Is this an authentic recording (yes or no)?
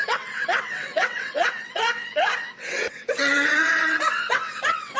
no